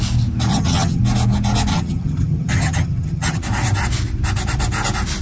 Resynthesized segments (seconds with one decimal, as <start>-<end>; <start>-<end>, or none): 0.5-1.0; 1.7-3.4